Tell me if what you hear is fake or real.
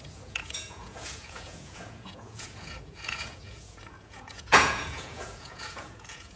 fake